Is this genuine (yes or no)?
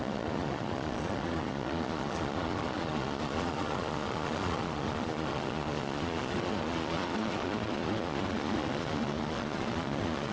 no